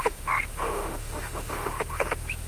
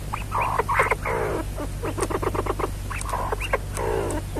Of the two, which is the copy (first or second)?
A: first